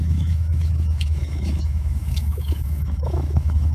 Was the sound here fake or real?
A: fake